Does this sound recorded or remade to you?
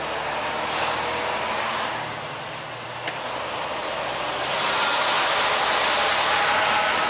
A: recorded